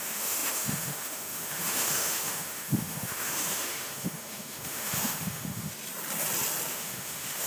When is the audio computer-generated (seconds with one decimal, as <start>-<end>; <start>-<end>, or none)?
0.0-5.7; 6.7-7.5